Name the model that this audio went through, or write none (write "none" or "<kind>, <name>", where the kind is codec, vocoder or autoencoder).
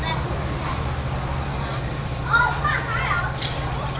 none